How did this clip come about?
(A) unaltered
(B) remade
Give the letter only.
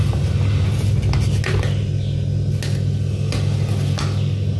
A